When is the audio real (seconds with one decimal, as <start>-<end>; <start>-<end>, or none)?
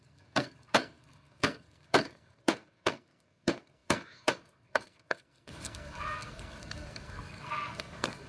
none